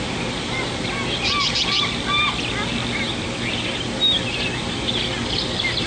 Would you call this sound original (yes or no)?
yes